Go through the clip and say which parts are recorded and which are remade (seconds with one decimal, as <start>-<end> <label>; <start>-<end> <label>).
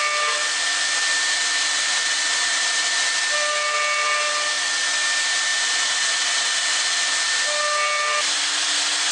0.0-9.1 recorded